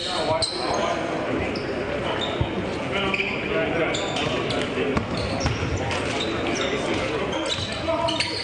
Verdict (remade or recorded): recorded